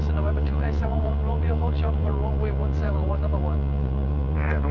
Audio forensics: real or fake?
fake